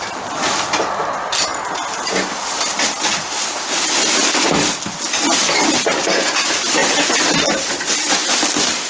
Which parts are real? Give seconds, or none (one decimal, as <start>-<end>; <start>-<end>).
0.0-8.9